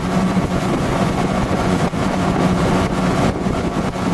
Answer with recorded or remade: remade